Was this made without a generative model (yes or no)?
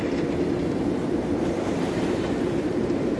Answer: no